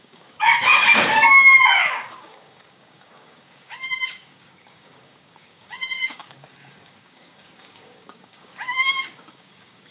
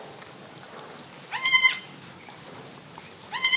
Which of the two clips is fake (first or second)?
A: first